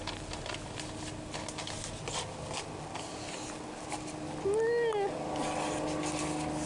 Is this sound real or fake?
real